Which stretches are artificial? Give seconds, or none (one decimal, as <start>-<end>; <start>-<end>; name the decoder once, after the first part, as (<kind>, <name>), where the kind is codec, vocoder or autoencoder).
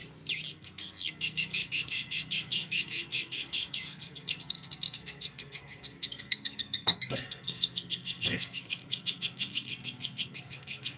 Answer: 0.5-11.0 (codec, SNAC)